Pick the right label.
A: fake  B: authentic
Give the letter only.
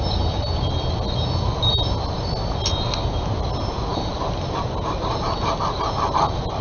B